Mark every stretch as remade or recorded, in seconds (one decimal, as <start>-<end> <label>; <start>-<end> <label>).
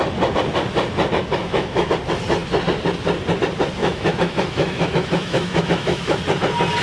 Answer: 0.0-1.4 recorded; 1.4-1.9 remade; 1.9-3.8 recorded; 3.8-6.2 remade; 6.2-6.8 recorded